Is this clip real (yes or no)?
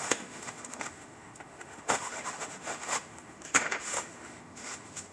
no